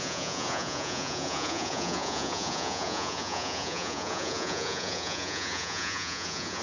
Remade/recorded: remade